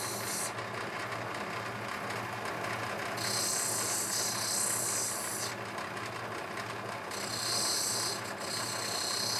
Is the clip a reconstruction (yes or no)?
no